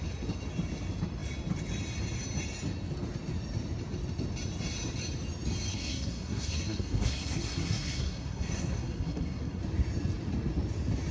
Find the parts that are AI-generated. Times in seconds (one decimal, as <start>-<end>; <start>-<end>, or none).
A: 5.7-9.6